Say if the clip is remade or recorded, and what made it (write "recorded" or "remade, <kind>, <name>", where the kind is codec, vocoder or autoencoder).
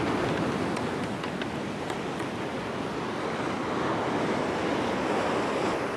recorded